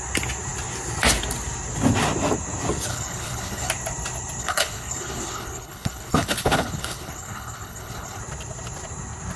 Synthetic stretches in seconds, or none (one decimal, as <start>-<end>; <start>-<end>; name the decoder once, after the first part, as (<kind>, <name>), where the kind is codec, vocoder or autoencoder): 2.9-3.7 (codec, HILCodec); 4.4-8.2